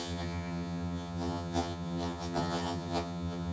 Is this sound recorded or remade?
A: remade